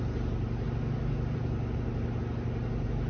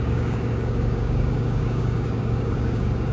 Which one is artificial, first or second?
second